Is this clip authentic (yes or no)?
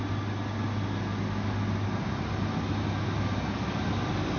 yes